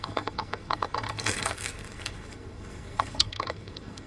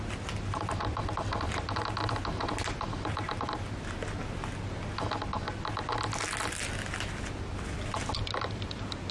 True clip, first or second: second